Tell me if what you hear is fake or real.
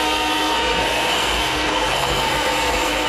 fake